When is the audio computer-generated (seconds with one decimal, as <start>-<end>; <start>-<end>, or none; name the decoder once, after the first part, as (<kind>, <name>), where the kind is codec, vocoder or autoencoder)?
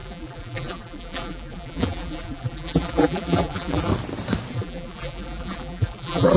0.0-3.9 (vocoder, BigVGAN v2); 4.5-6.4